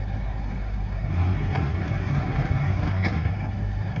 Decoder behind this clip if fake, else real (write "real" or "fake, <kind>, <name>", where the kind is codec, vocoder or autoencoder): fake, codec, SNAC